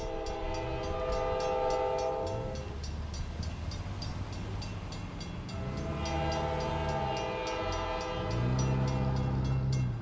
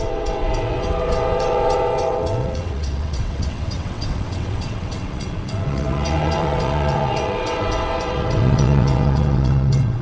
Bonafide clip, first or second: first